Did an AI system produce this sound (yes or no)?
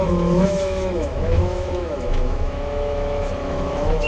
yes